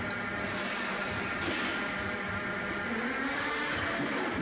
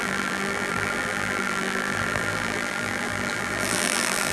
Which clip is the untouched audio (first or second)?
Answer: first